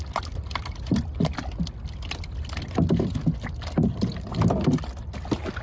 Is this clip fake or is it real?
real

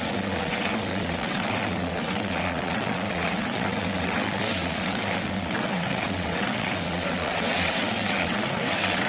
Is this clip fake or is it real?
fake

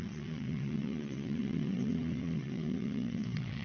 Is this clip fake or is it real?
fake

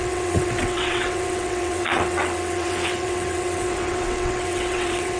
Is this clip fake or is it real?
fake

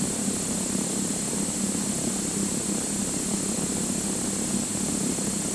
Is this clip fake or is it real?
real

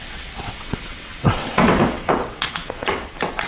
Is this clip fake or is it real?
fake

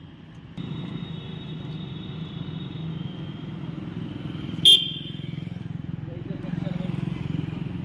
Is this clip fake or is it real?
real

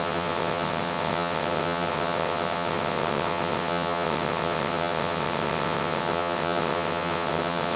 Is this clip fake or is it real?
fake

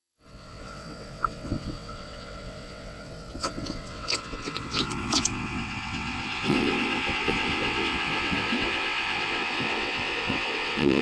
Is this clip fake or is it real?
fake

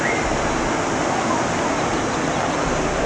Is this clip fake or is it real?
real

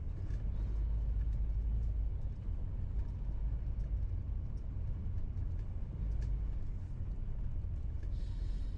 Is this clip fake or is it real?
real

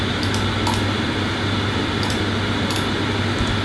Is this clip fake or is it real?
real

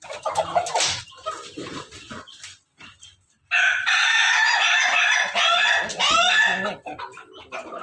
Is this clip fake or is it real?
real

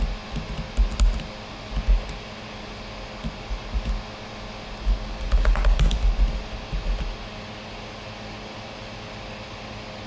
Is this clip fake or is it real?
real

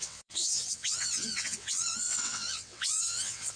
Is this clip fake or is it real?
fake